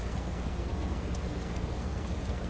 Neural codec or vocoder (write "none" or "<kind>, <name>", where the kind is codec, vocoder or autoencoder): codec, SNAC